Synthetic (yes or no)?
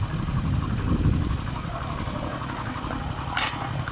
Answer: no